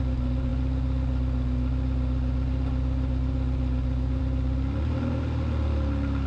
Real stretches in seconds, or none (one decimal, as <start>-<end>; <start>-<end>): 0.0-6.3